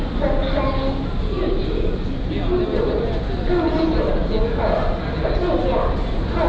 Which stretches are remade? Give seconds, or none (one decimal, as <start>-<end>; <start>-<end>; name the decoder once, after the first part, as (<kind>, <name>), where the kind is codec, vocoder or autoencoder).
none

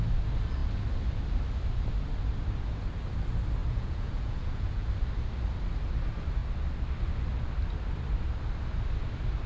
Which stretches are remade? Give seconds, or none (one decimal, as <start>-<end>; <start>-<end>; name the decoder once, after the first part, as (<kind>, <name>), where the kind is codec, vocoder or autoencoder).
3.6-4.9 (vocoder, Vocos)

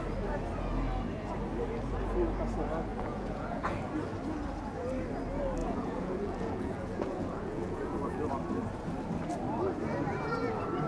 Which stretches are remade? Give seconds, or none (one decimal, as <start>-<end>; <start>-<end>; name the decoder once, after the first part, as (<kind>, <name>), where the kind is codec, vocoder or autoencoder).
2.9-3.8 (vocoder, Vocos); 5.6-8.3

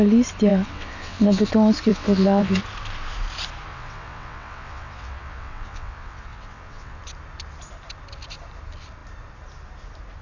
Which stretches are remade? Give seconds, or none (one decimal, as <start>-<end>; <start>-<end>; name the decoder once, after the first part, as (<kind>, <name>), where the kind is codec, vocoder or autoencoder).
0.5-1.5 (vocoder, WaveNeXt); 1.9-2.6; 3.7-7.0

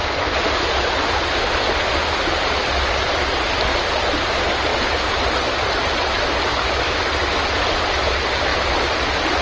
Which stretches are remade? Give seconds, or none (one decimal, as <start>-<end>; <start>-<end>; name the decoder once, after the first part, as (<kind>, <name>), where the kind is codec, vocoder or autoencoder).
none

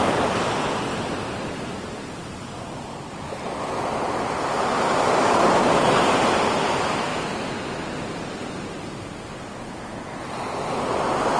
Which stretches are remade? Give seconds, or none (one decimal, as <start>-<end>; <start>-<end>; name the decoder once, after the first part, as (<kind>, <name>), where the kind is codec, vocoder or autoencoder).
none

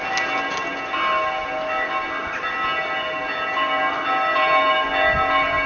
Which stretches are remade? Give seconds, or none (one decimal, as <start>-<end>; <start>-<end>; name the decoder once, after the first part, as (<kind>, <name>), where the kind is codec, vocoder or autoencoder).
none